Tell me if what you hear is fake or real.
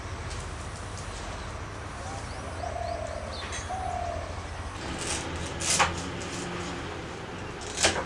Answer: real